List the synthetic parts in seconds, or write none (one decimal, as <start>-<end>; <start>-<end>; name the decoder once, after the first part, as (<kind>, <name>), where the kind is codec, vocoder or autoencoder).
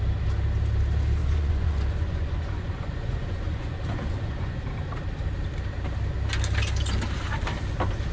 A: 1.2-4.6 (vocoder, Vocos)